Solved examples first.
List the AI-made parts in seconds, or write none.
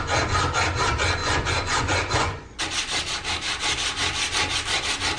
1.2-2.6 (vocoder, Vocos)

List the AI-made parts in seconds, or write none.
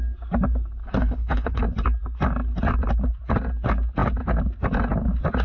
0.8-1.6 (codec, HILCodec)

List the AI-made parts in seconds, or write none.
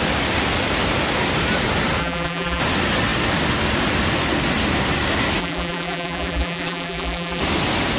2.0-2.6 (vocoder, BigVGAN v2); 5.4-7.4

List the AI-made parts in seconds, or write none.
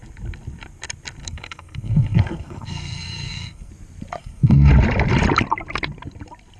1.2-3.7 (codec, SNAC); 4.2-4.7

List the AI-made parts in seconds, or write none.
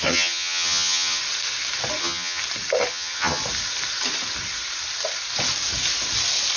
0.0-1.2 (vocoder, HiFi-GAN); 2.0-2.4; 2.9-3.4